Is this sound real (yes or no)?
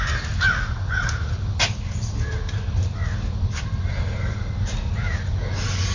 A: yes